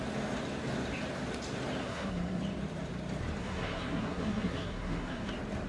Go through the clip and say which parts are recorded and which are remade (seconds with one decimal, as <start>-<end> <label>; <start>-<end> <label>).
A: 0.0-1.8 recorded; 1.8-2.4 remade; 2.4-3.4 recorded; 3.4-5.3 remade; 5.3-5.7 recorded